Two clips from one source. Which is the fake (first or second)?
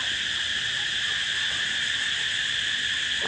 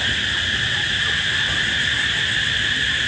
second